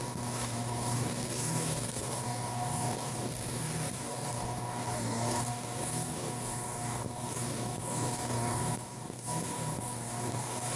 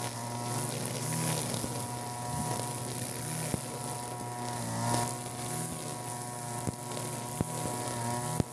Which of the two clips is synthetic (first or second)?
first